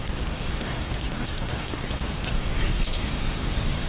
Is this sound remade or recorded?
remade